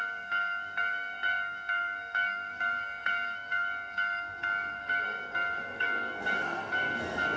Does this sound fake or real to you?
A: fake